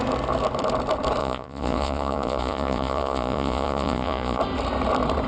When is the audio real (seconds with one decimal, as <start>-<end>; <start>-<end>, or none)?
0.0-1.2; 4.4-5.3